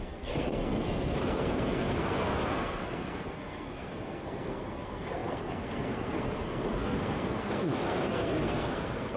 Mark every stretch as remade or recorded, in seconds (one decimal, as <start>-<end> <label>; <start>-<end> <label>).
0.0-9.2 remade